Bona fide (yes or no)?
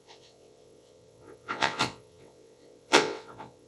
no